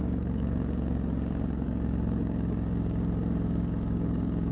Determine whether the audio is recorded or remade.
remade